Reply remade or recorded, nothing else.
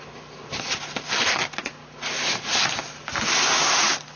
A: recorded